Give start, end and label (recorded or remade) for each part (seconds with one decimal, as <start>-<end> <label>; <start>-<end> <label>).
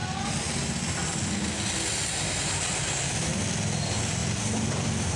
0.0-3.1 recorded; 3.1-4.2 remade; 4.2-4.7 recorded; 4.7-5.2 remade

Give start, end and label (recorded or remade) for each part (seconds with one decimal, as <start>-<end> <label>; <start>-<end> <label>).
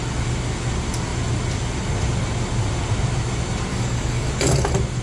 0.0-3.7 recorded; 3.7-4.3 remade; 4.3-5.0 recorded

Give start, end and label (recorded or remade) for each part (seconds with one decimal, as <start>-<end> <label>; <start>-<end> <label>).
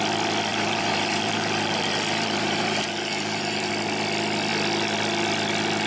0.0-0.5 recorded; 0.5-3.7 remade; 3.7-5.9 recorded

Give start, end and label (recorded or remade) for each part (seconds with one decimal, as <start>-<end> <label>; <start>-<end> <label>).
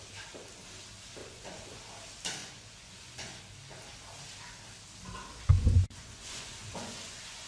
0.0-1.2 recorded; 1.2-1.8 remade; 1.8-2.4 recorded; 2.4-3.4 remade; 3.4-5.5 recorded; 5.5-7.5 remade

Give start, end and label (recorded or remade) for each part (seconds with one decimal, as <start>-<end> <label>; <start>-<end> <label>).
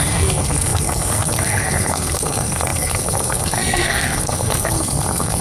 0.0-5.4 remade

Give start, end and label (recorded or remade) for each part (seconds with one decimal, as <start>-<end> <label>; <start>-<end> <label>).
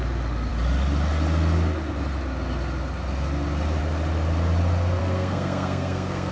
0.0-5.0 recorded; 5.0-6.3 remade